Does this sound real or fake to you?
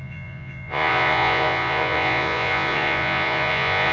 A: fake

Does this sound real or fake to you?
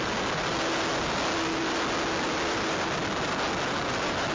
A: real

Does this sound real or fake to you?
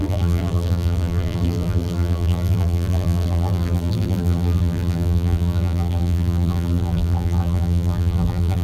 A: fake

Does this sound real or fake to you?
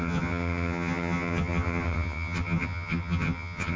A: fake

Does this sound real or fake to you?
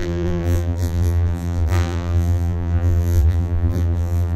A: fake